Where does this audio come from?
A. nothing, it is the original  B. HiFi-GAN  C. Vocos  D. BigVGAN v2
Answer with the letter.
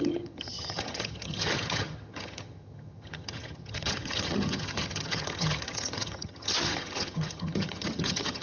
B